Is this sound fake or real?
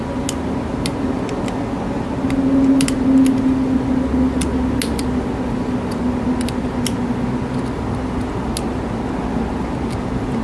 real